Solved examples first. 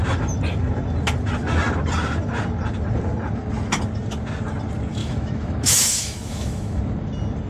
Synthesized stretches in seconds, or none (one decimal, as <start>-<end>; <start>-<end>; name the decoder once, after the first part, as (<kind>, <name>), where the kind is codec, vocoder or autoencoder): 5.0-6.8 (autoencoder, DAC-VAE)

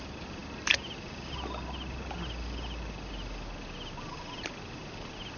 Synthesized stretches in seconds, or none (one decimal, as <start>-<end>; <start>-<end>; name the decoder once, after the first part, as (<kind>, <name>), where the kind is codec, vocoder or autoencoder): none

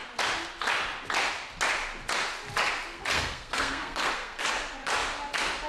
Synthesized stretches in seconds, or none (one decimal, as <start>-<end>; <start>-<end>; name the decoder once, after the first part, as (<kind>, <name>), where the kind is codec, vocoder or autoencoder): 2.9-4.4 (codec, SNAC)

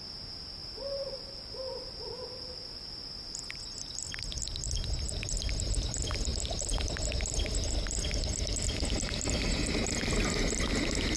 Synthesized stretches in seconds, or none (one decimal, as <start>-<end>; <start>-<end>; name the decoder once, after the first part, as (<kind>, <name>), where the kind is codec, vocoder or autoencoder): 0.6-3.6 (vocoder, BigVGAN v2)